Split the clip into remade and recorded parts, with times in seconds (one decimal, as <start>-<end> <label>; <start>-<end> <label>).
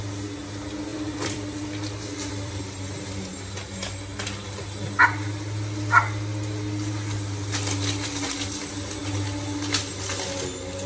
0.0-0.9 recorded; 0.9-2.6 remade; 2.6-10.9 recorded